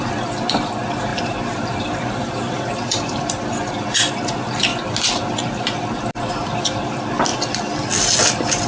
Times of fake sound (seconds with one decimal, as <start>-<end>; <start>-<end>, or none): 1.1-3.2